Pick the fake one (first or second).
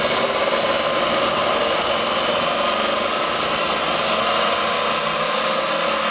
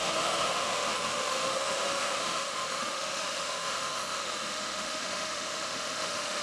second